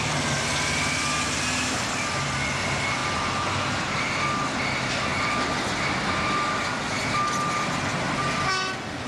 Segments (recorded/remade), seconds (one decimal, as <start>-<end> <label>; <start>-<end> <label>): 0.0-9.1 recorded